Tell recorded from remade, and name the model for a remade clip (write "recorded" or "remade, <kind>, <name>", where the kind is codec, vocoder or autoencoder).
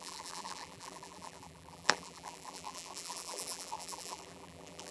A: remade, vocoder, BigVGAN v2